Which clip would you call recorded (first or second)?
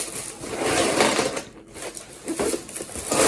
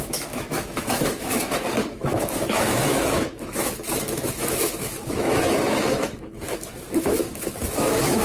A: first